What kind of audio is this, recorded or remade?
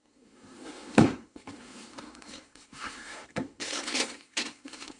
remade